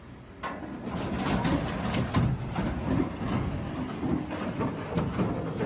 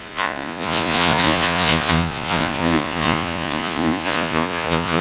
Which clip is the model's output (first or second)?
second